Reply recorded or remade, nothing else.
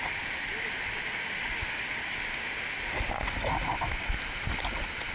recorded